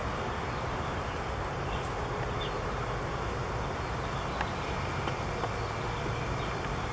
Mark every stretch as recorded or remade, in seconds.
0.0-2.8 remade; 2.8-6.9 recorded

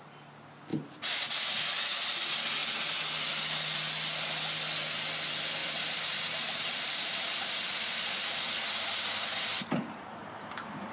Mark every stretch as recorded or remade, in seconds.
0.0-0.7 recorded; 0.7-1.2 remade; 1.2-5.6 recorded; 5.6-10.2 remade; 10.2-10.9 recorded

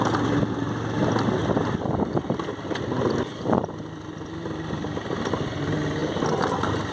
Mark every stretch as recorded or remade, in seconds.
0.0-1.4 recorded; 1.4-5.5 remade; 5.5-6.0 recorded; 6.0-6.5 remade; 6.5-6.9 recorded